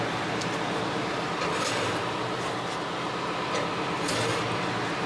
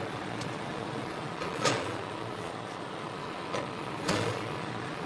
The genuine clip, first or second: first